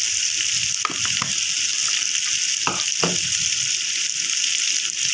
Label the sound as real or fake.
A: real